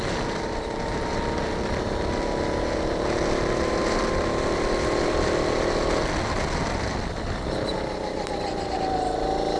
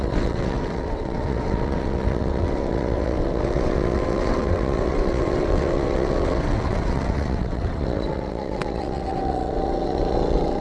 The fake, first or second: second